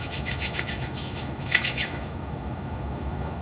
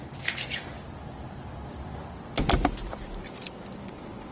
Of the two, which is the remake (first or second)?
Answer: first